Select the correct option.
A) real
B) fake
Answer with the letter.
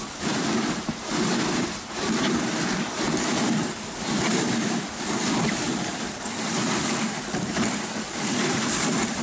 B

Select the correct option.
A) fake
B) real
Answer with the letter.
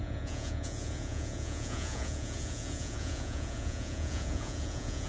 A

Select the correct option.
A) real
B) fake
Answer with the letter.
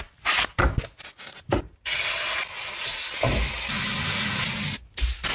A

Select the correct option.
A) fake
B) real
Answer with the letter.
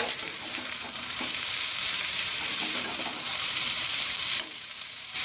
A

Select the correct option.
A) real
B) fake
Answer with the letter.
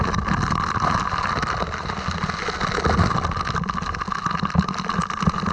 A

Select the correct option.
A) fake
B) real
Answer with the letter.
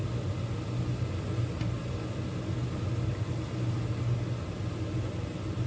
B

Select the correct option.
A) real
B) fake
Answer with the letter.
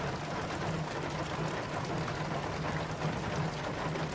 A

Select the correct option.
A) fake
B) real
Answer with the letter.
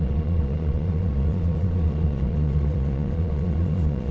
A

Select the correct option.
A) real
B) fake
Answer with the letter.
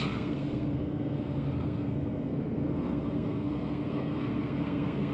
B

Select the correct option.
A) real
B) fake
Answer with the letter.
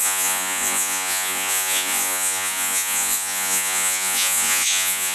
B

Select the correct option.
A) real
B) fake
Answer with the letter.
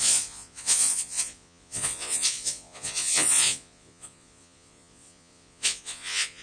B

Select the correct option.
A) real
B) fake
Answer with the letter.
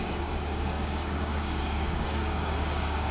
B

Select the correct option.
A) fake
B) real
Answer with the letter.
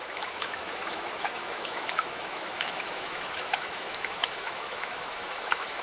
A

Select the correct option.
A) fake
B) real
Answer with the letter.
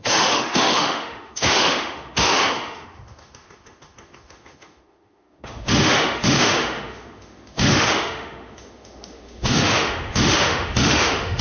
A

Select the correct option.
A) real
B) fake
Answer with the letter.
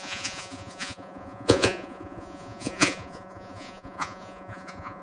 B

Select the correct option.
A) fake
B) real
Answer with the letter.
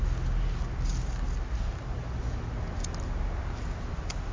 B